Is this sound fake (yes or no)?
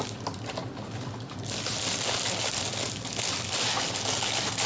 no